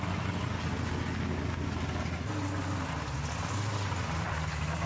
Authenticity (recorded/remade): recorded